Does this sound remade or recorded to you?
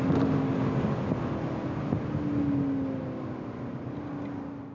recorded